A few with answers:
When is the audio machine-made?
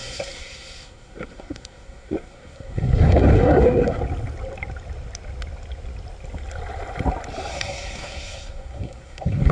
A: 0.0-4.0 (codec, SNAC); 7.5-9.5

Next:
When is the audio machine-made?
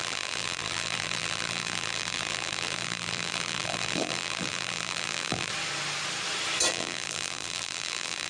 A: 0.0-5.5 (vocoder, BigVGAN v2); 6.7-8.3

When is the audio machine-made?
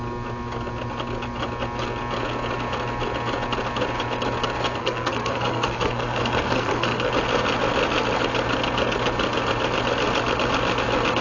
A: 4.8-7.1 (codec, SNAC)